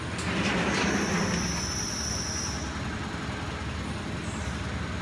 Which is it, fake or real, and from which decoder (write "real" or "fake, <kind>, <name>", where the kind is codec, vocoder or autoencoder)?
real